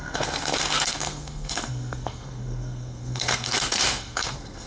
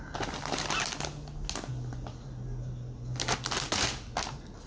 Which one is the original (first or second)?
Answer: second